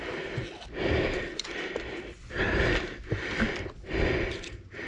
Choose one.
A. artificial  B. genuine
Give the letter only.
B